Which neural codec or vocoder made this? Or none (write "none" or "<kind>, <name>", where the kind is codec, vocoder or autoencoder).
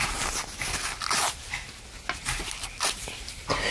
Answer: none